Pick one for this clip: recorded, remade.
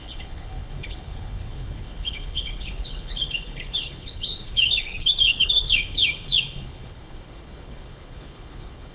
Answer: remade